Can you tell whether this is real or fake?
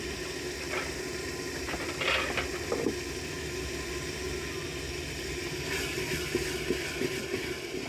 real